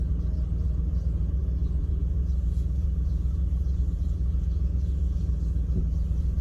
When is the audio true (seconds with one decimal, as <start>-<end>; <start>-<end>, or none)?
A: 0.0-1.4; 5.2-6.4